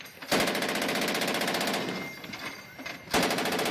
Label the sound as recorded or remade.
recorded